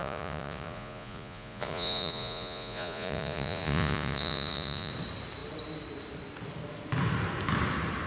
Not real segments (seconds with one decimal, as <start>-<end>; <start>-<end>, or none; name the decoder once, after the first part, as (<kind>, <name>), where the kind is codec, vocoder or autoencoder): 0.0-4.9 (vocoder, Vocos)